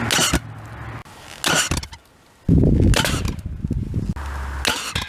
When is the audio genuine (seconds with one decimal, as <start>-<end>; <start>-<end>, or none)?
0.0-5.1